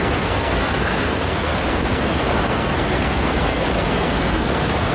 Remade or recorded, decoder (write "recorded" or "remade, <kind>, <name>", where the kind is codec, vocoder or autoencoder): remade, codec, SNAC